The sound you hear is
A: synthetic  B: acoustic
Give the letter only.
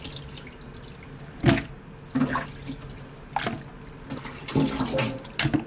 B